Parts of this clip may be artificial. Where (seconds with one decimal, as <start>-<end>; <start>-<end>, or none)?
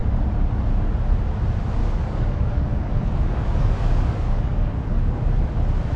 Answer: 1.8-5.4